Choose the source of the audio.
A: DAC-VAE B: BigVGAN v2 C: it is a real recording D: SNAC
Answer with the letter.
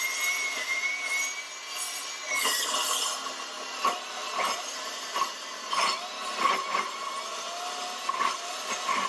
C